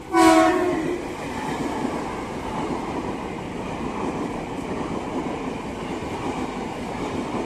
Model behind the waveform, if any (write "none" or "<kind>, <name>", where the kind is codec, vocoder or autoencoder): none